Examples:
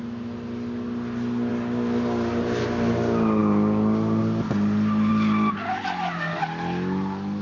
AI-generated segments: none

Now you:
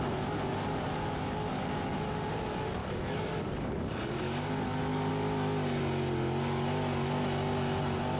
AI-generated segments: 2.8-5.1 (codec, DAC)

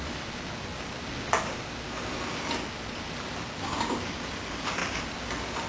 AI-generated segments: none

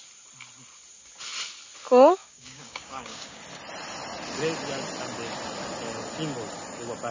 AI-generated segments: 2.2-3.4 (codec, DAC)

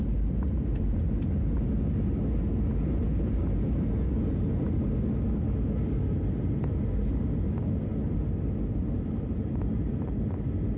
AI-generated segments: none